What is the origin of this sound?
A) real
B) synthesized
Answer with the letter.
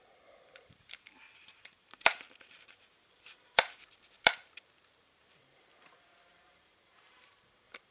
B